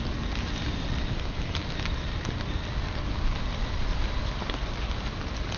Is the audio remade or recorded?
recorded